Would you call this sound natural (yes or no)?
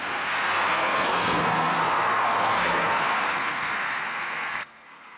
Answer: no